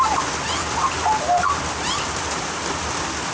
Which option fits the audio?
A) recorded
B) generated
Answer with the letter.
A